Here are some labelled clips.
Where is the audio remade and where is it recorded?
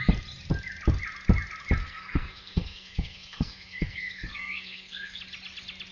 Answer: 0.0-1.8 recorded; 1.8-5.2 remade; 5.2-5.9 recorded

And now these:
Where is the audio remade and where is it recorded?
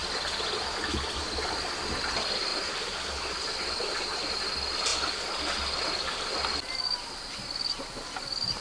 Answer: 0.0-8.6 recorded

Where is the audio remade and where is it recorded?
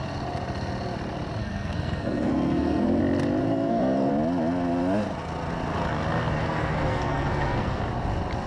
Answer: 0.0-1.4 recorded; 1.4-3.0 remade; 3.0-3.4 recorded; 3.4-4.1 remade; 4.1-6.4 recorded; 6.4-7.8 remade; 7.8-8.5 recorded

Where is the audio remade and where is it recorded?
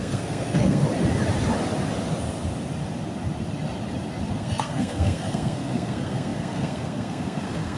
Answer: 0.0-0.8 remade; 0.8-4.3 recorded; 4.3-7.8 remade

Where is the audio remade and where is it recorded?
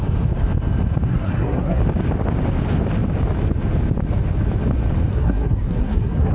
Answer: 0.0-1.1 recorded; 1.1-1.8 remade; 1.8-5.1 recorded; 5.1-6.3 remade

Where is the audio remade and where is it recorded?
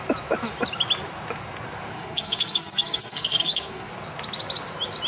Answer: 0.0-1.9 recorded; 1.9-3.9 remade; 3.9-5.1 recorded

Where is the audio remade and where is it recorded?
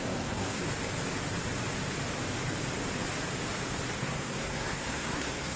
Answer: 0.0-0.6 remade; 0.6-4.0 recorded; 4.0-5.6 remade